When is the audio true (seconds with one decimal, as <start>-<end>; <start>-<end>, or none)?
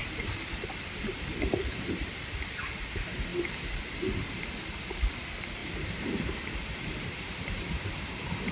0.5-5.6